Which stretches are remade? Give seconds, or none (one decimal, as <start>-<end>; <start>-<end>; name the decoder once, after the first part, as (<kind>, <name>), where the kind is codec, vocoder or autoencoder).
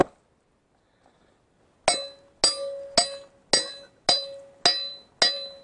none